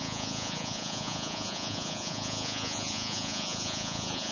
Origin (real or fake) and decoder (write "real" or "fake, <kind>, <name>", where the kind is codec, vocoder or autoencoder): fake, vocoder, Vocos